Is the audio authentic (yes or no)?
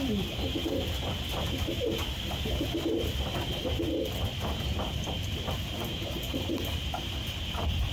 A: yes